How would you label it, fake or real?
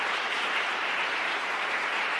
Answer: fake